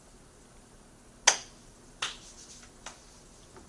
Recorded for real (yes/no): yes